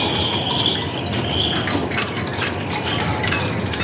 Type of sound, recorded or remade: recorded